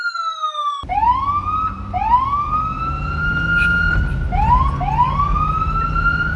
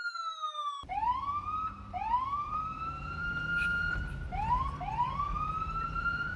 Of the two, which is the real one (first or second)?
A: first